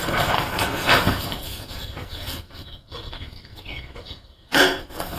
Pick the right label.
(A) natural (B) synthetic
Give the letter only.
B